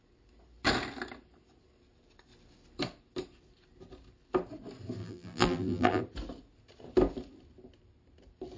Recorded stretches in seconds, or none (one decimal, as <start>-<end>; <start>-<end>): 0.0-5.0; 6.0-8.6